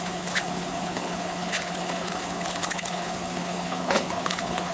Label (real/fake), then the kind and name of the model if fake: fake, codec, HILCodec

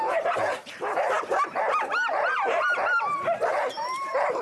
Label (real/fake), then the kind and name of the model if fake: fake, vocoder, BigVGAN v2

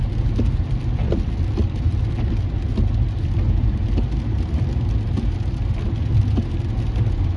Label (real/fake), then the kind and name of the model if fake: real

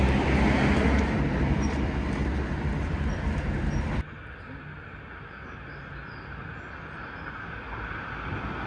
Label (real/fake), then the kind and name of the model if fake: real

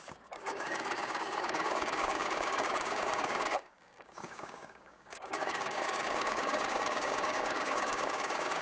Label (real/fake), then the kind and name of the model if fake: fake, codec, DAC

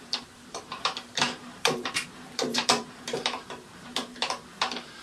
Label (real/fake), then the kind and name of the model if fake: fake, vocoder, BigVGAN v2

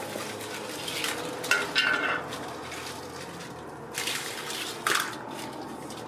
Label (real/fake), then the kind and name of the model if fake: real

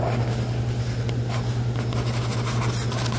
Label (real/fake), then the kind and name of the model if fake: real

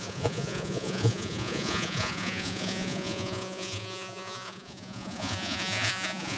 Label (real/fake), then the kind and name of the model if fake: fake, vocoder, Vocos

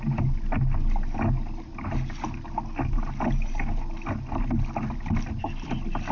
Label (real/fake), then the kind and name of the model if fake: real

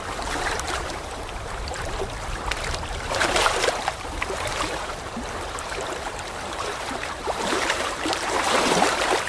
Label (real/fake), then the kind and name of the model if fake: fake, vocoder, BigVGAN v2